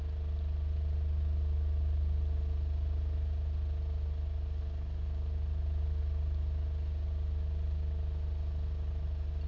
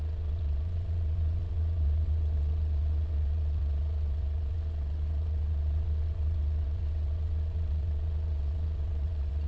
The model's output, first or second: second